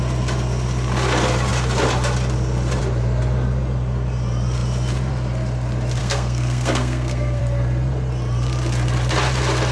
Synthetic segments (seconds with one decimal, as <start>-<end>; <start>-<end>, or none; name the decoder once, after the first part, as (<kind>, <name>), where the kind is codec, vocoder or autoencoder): 6.0-7.4 (codec, SNAC)

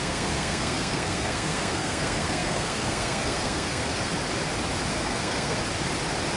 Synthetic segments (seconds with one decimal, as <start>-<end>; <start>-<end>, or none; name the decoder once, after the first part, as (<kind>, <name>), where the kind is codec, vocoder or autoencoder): 0.0-4.1 (codec, SNAC); 4.9-5.6